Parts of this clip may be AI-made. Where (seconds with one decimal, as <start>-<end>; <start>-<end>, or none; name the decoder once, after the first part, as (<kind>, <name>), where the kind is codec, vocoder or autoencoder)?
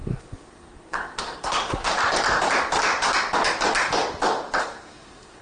0.0-1.8 (codec, SNAC); 4.6-5.4